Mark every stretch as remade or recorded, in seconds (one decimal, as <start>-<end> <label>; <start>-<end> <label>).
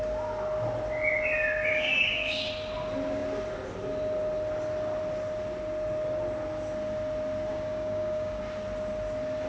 0.0-1.7 recorded; 1.7-2.5 remade; 2.5-7.5 recorded; 7.5-8.4 remade; 8.4-9.5 recorded